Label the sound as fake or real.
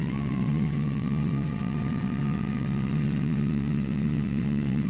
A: fake